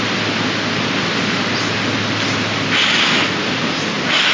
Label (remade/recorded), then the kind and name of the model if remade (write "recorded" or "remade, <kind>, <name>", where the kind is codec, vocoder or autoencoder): recorded